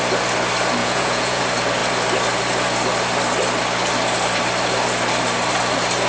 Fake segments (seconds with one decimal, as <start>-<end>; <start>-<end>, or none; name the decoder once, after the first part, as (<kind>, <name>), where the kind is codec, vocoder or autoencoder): 0.8-1.4 (vocoder, Vocos)